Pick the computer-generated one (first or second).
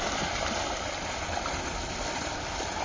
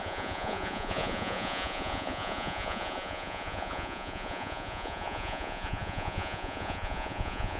second